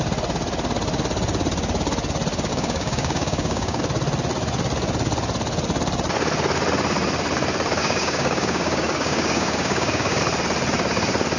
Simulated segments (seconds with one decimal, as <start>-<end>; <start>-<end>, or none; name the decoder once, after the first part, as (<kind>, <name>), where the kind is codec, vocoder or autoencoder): 2.5-3.8 (codec, DAC); 7.8-10.2